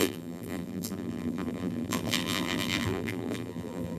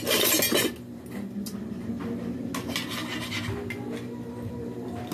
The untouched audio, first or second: second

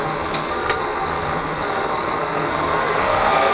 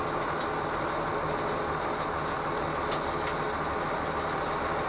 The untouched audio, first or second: second